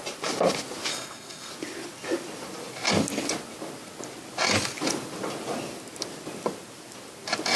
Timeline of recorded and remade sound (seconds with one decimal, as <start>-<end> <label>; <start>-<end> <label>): 0.0-0.9 recorded; 0.9-1.5 remade; 1.5-7.6 recorded